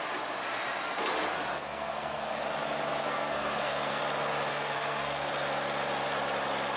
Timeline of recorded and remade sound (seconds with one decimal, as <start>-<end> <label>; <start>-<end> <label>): 0.0-1.5 recorded; 1.5-2.4 remade; 2.4-3.0 recorded; 3.0-4.0 remade; 4.0-4.5 recorded; 4.5-5.3 remade; 5.3-6.8 recorded